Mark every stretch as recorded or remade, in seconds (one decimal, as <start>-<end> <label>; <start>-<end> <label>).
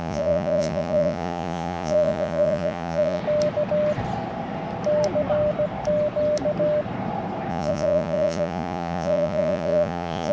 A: 0.0-3.2 remade; 3.2-7.5 recorded; 7.5-10.3 remade